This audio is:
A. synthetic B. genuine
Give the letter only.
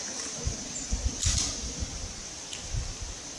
B